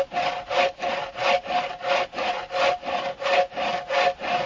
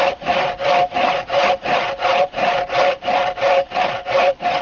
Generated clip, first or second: second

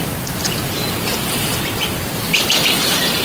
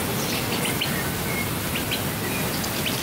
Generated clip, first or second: first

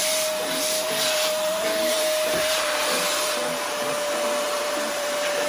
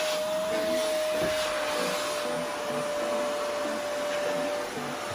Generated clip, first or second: first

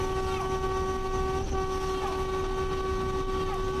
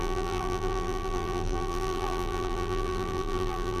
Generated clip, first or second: second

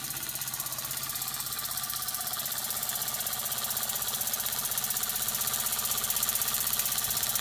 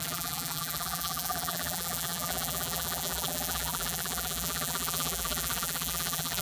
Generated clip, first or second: second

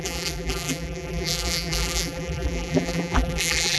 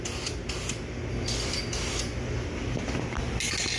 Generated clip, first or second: first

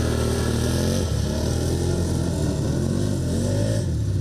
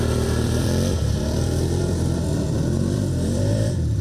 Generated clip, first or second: second